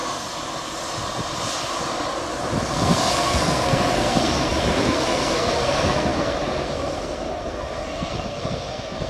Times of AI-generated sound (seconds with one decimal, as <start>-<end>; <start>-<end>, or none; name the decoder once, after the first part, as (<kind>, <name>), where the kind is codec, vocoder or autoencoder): 2.6-9.1 (codec, SNAC)